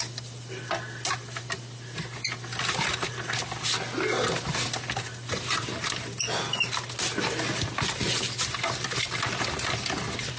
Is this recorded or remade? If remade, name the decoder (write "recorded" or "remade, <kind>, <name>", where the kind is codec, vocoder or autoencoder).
recorded